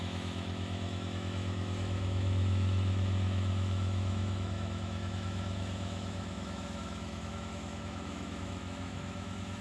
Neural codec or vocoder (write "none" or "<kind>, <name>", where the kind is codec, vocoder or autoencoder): autoencoder, DAC-VAE